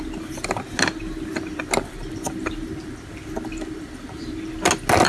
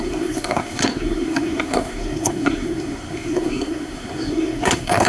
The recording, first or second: first